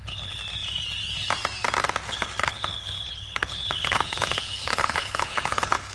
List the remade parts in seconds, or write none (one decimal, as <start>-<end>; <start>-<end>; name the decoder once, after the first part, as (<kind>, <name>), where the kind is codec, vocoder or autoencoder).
0.0-0.4 (codec, HILCodec); 2.1-5.9